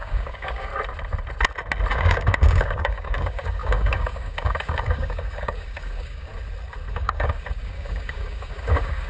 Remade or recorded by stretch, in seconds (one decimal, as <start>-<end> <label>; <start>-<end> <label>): 0.0-0.7 remade; 0.7-1.9 recorded; 1.9-6.3 remade; 6.3-6.9 recorded; 6.9-9.1 remade